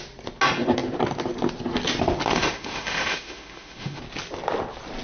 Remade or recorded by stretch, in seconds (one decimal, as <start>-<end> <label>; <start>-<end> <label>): 0.0-2.3 recorded; 2.3-4.0 remade; 4.0-5.0 recorded